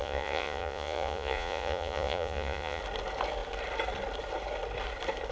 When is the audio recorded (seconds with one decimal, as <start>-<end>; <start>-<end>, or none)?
2.8-5.3